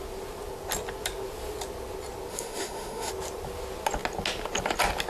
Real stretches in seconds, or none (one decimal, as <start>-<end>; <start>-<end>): 0.0-2.3; 3.1-5.1